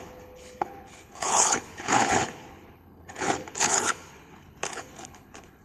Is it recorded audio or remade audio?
remade